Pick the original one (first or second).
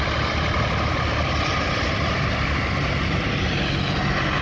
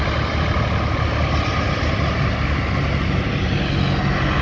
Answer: second